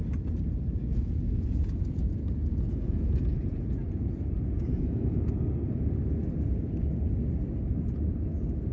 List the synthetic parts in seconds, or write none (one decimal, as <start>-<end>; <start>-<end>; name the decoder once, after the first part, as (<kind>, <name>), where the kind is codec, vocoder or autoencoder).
0.9-5.3 (vocoder, Vocos)